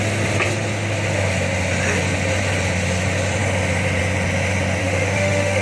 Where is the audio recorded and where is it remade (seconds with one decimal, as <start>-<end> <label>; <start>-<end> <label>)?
0.0-4.8 recorded; 4.8-5.6 remade